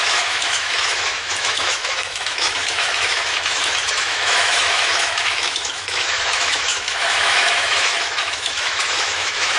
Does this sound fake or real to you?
fake